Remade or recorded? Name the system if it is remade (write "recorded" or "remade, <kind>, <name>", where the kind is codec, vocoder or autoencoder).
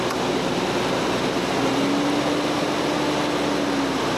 recorded